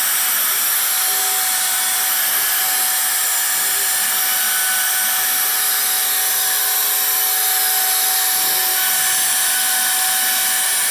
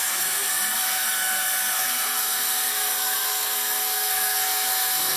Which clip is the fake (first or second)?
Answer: second